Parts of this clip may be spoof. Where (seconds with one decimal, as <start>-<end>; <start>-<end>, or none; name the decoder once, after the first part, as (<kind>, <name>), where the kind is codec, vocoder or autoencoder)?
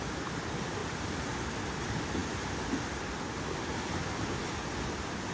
none